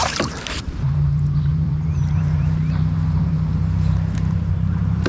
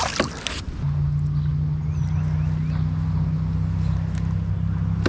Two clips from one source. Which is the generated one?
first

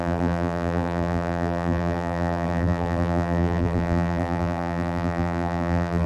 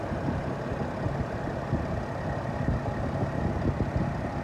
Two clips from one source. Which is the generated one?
first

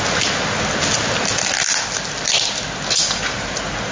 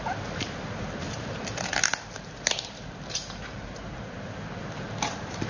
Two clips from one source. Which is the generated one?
second